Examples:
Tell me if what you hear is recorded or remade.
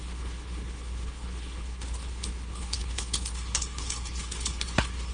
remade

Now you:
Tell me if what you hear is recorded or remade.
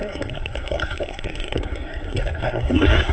remade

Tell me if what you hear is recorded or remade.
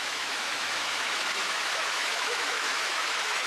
remade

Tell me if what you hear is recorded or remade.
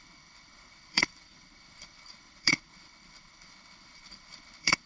remade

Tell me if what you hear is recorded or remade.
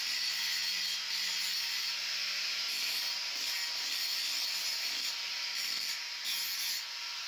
recorded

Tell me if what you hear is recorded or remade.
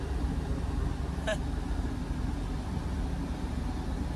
recorded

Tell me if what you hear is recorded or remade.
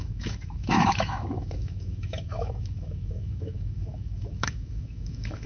remade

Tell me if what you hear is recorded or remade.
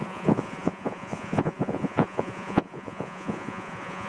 remade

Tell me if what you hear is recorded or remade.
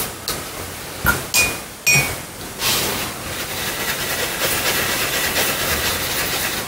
recorded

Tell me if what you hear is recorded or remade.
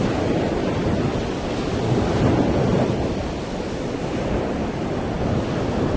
recorded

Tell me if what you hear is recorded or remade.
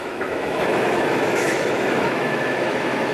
remade